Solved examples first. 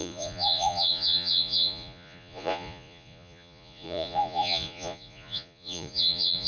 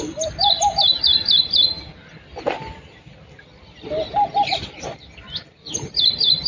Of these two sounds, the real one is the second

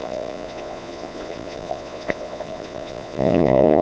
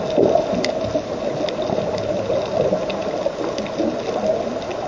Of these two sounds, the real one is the second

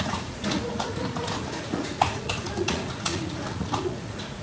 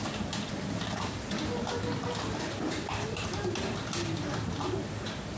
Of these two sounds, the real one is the second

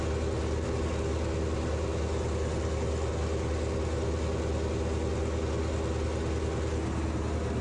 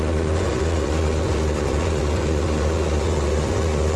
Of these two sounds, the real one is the first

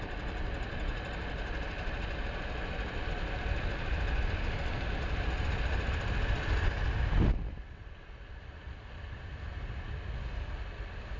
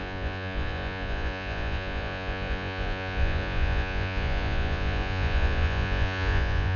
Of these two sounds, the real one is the first